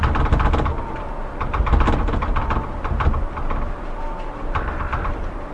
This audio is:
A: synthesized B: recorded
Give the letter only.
B